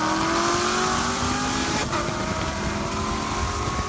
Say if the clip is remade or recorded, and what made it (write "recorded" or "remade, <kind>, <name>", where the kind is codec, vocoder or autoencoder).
recorded